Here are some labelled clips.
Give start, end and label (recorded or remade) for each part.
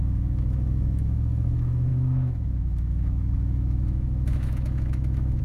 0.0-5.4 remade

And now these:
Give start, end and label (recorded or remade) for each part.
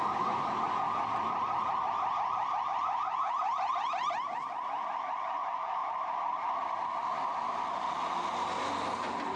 0.0-9.4 recorded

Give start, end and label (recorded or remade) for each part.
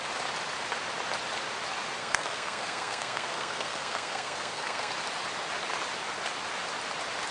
0.0-2.0 recorded; 2.0-4.9 remade; 4.9-7.3 recorded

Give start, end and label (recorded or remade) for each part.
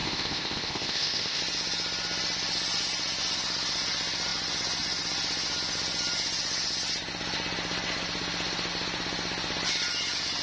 0.0-1.4 remade; 1.4-10.4 recorded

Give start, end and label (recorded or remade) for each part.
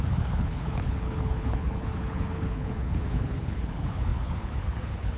0.0-5.2 remade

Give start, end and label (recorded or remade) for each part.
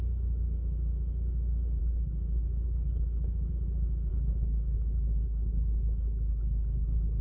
0.0-1.8 recorded; 1.8-3.5 remade; 3.5-4.1 recorded; 4.1-7.2 remade